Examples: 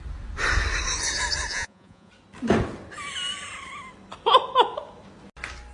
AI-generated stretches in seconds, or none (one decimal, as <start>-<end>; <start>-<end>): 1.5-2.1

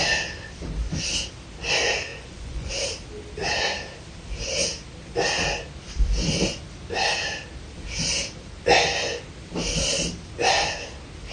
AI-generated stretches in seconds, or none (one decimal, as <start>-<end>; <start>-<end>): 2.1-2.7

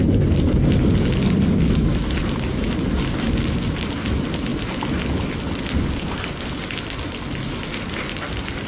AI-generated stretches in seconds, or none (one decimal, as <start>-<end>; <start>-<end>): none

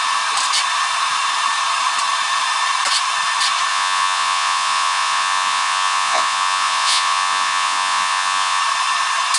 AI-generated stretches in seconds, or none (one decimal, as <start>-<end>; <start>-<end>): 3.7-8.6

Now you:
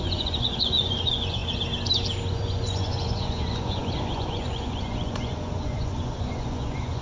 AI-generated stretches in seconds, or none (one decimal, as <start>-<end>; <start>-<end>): 0.0-1.4; 2.3-7.0

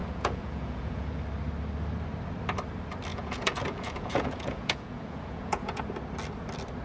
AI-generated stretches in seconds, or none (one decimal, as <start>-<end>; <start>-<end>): 0.0-1.2; 3.1-5.8